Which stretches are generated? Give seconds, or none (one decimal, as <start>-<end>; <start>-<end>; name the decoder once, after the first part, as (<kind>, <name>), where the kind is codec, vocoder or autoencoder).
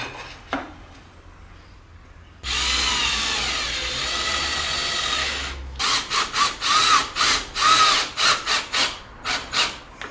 5.2-5.8 (autoencoder, DAC-VAE)